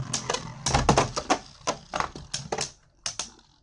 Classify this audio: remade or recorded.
recorded